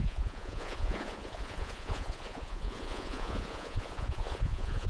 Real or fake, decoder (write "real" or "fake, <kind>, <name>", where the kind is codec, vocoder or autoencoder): fake, vocoder, Vocos